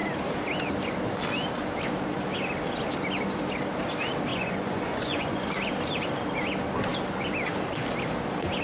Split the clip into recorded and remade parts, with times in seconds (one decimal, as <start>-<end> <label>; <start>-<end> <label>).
0.0-4.3 recorded; 4.3-5.5 remade; 5.5-8.6 recorded